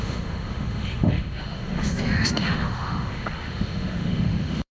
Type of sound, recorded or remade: remade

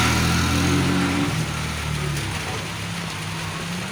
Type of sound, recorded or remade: recorded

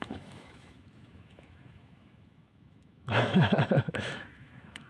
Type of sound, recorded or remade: remade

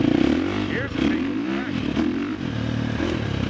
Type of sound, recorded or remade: recorded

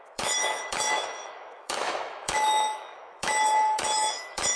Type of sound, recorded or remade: remade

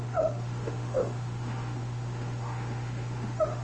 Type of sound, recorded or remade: remade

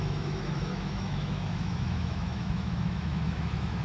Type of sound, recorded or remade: remade